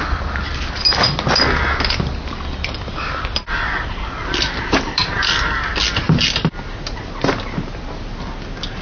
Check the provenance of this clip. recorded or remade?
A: recorded